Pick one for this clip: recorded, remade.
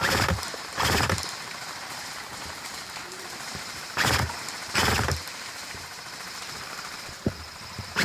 remade